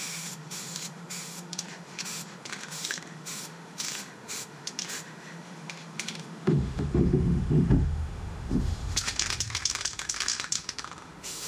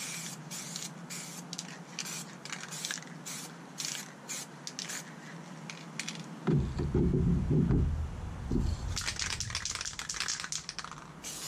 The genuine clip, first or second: second